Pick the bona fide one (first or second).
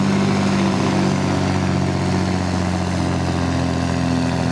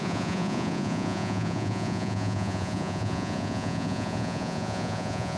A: first